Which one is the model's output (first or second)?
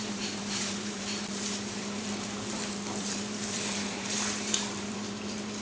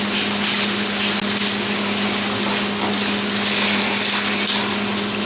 first